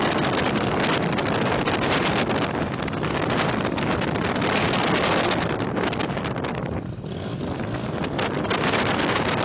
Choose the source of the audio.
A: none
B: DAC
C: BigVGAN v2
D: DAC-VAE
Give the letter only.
A